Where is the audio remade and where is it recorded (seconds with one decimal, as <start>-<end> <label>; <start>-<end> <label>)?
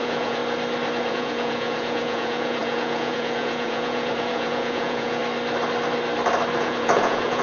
0.0-0.4 remade; 0.4-1.1 recorded; 1.1-5.2 remade; 5.2-6.6 recorded; 6.6-7.4 remade